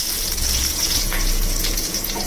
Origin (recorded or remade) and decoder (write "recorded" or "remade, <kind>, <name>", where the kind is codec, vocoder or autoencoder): remade, vocoder, Vocos